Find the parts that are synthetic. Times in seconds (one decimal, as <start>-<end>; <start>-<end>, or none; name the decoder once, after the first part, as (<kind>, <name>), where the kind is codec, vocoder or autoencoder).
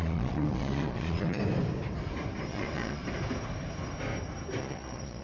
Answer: 0.0-1.4 (vocoder, Vocos); 2.5-3.0; 4.6-5.2